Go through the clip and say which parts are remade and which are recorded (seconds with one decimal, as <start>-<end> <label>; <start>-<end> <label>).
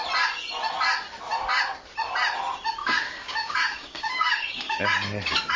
0.0-2.8 recorded; 2.8-4.8 remade; 4.8-5.6 recorded